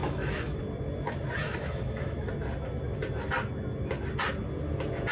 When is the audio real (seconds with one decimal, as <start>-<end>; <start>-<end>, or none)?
0.6-1.4; 2.3-5.1